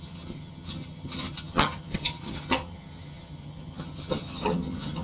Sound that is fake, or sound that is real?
fake